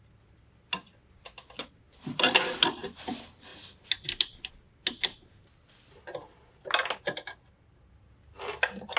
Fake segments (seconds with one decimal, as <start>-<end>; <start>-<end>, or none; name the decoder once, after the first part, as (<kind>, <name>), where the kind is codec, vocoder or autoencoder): none